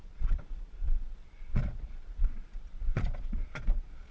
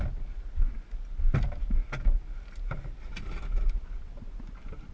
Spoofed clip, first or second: first